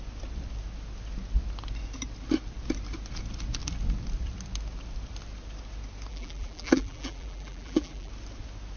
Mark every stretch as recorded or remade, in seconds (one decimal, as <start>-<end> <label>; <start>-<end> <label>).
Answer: 0.0-6.1 recorded; 6.1-8.1 remade; 8.1-8.8 recorded